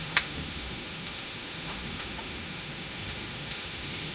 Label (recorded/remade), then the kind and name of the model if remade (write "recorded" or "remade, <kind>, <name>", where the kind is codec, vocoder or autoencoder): remade, autoencoder, DAC-VAE